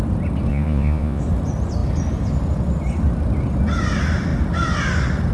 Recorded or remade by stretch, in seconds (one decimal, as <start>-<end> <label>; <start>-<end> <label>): 0.0-0.5 recorded; 0.5-1.2 remade; 1.2-5.3 recorded